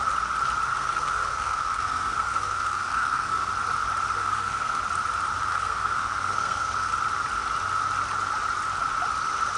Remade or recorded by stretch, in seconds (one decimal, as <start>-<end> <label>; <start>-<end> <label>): 0.0-0.7 recorded; 0.7-3.5 remade; 3.5-4.2 recorded; 4.2-4.8 remade; 4.8-5.5 recorded; 5.5-6.9 remade; 6.9-9.6 recorded